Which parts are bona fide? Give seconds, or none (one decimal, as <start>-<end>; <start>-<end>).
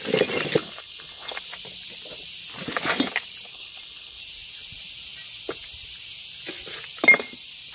0.0-0.6; 1.4-3.5; 4.2-7.7